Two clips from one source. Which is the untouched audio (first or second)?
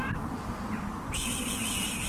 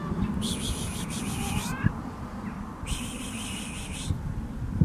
first